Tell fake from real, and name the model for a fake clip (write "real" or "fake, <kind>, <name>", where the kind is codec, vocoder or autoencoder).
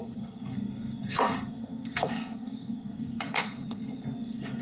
fake, codec, SNAC